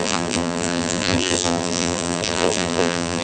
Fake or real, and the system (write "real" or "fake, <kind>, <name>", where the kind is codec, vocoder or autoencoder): fake, vocoder, BigVGAN v2